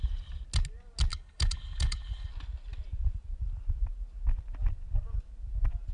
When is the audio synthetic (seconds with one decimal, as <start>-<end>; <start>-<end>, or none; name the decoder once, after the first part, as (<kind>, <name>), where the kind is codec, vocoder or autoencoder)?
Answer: 1.1-2.3 (codec, HILCodec)